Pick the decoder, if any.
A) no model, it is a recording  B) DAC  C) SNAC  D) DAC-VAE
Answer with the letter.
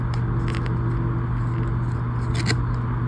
A